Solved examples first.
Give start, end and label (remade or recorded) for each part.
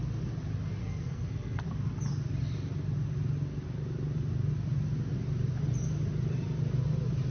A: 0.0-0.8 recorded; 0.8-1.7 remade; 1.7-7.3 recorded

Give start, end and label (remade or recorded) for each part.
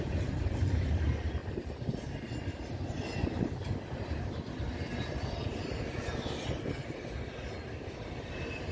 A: 0.0-8.7 recorded